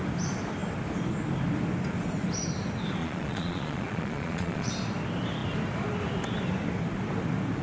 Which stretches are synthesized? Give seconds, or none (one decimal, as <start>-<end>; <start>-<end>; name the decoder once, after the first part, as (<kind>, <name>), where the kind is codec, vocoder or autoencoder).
3.0-4.7 (vocoder, Vocos)